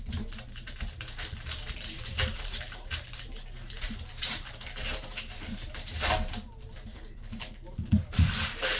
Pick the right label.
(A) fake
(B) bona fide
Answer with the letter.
A